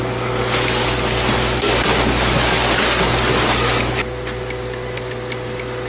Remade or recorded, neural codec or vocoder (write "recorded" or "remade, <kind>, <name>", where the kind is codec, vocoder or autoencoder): recorded